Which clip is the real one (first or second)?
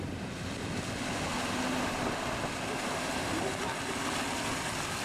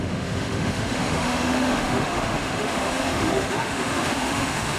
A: first